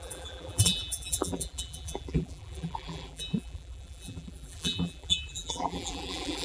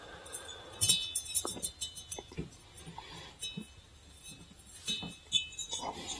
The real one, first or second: second